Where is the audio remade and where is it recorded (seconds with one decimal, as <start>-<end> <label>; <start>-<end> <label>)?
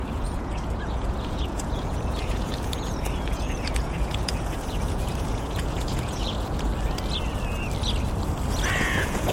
0.0-6.7 remade; 6.7-8.8 recorded; 8.8-9.3 remade